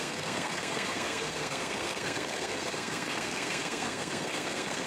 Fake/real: fake